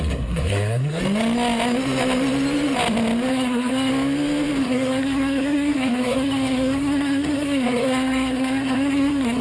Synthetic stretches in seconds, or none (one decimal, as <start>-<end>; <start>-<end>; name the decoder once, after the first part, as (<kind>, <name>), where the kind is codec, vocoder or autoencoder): 0.0-1.0 (codec, SNAC); 3.3-3.9; 4.6-9.4